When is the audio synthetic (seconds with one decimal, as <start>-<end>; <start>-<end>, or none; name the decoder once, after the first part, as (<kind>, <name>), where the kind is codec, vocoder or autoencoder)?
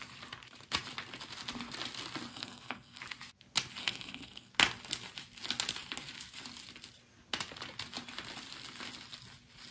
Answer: 2.3-3.0 (codec, SNAC); 3.8-4.5